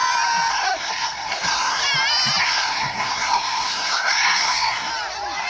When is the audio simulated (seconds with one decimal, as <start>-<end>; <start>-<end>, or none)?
0.5-1.8; 2.4-4.9